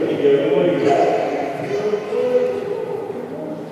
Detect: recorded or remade recorded